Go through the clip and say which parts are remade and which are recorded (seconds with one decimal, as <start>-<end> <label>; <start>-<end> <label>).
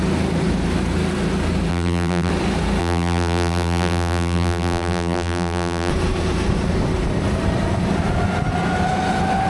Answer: 0.0-1.7 recorded; 1.7-2.3 remade; 2.3-2.8 recorded; 2.8-5.9 remade; 5.9-9.5 recorded